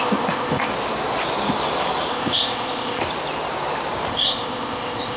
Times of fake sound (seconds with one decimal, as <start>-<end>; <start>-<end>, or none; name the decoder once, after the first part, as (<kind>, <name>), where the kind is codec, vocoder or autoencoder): 0.0-0.7 (codec, ZipCodec); 2.1-3.0; 4.1-5.2